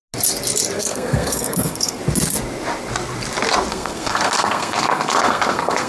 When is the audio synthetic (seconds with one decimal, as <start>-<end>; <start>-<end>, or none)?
0.8-2.0; 3.7-5.9